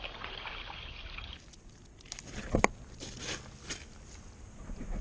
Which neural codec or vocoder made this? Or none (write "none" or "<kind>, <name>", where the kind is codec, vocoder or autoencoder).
none